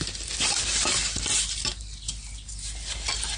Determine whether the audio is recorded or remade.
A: recorded